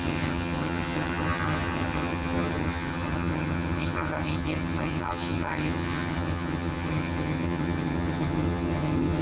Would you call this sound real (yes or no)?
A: no